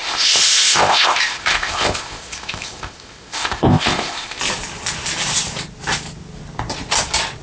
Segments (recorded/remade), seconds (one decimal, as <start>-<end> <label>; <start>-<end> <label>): 0.0-4.4 remade; 4.4-7.4 recorded